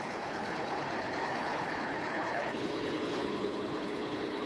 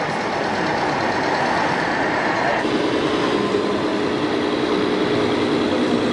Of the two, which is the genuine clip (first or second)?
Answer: second